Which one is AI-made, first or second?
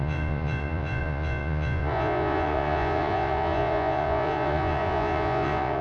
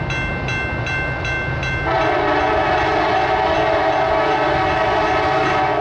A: first